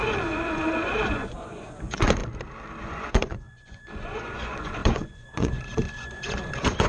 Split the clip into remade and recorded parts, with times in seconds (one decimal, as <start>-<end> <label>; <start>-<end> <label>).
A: 0.0-2.2 remade; 2.2-2.8 recorded; 2.8-6.9 remade